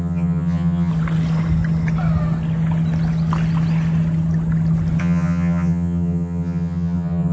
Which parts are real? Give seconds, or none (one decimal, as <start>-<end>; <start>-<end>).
0.9-5.0